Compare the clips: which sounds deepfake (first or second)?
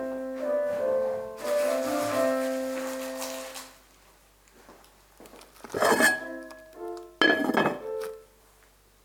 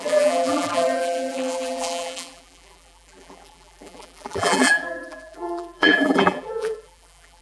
second